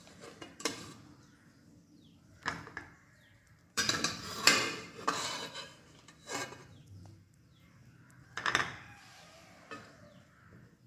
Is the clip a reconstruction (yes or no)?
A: yes